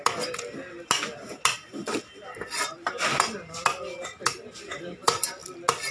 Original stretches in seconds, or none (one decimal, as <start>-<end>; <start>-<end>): 0.0-5.9